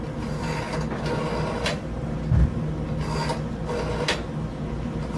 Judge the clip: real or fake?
real